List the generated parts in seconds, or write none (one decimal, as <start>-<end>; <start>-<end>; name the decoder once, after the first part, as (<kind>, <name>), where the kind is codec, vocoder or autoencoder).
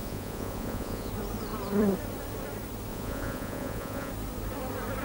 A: 0.0-1.1 (vocoder, Vocos); 2.9-4.1